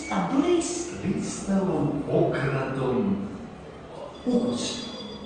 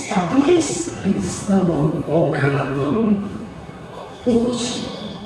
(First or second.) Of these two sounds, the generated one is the second